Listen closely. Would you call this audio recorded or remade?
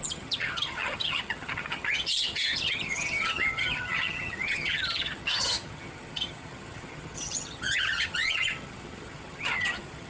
remade